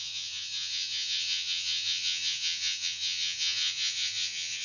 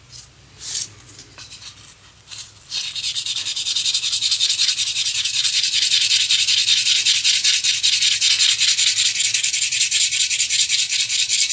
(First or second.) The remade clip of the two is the first